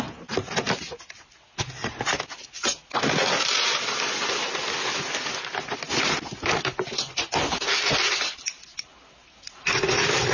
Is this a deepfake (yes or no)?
no